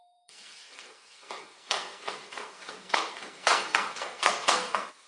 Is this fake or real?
fake